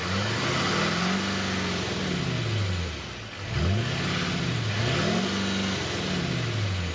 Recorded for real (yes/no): yes